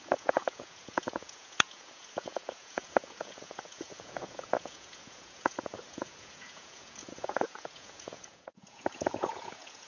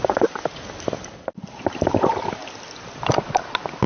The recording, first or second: second